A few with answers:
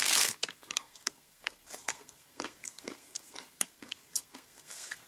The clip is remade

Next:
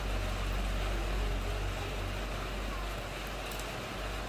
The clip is recorded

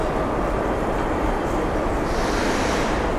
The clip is recorded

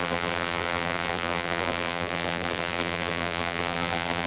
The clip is remade